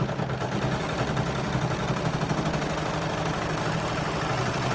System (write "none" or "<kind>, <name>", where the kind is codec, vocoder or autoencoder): none